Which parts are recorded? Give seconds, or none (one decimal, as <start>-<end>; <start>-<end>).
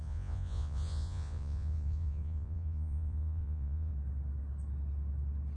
3.9-5.6